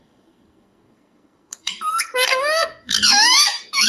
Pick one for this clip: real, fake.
fake